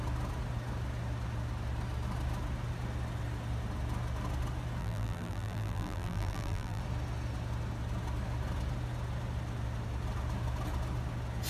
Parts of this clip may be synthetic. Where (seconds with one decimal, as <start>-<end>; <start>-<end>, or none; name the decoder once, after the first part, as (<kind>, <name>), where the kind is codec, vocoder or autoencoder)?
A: 4.8-6.8 (vocoder, BigVGAN v2)